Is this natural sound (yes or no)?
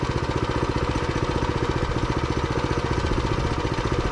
yes